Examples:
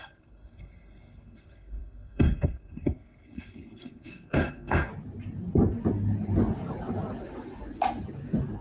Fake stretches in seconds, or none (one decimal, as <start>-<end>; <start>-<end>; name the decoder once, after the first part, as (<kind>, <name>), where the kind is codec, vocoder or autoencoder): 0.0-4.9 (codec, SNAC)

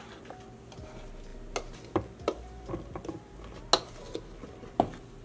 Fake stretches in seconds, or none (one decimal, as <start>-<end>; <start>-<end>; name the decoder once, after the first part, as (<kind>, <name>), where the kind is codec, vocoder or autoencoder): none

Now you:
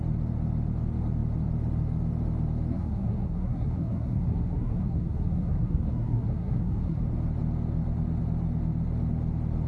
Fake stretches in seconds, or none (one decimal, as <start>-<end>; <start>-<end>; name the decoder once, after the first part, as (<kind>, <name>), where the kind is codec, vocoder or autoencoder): 2.7-7.0 (codec, SNAC)